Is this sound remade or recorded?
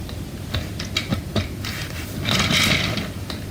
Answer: recorded